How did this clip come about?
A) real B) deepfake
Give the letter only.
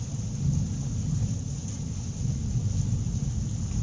A